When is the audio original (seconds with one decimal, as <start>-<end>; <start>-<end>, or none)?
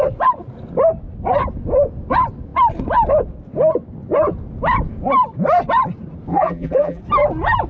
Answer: 0.0-6.3; 7.0-7.7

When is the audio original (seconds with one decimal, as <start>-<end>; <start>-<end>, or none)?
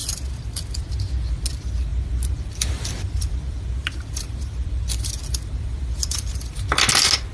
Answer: 0.8-1.9; 6.3-7.3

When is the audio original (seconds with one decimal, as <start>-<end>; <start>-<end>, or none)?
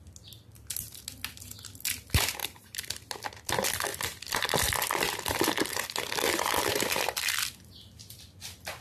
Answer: 0.0-2.4; 3.0-3.9; 8.2-8.8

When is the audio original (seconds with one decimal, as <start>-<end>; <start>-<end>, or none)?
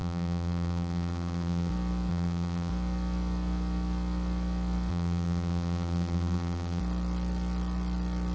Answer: 1.7-2.1; 2.7-4.9; 6.8-8.3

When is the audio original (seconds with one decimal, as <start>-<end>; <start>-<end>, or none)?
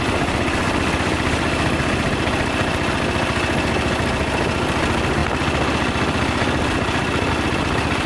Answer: 0.0-8.1